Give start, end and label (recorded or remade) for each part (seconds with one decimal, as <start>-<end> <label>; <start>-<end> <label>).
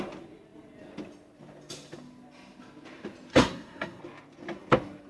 0.0-3.3 recorded; 3.3-4.0 remade; 4.0-5.1 recorded